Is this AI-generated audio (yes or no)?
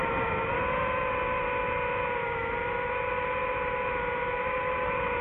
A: yes